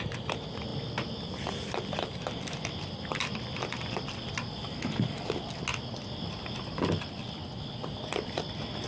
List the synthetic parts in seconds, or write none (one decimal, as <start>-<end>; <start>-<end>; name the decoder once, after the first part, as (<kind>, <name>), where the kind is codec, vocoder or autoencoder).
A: 0.7-4.3 (vocoder, BigVGAN v2); 5.7-6.9; 7.4-8.9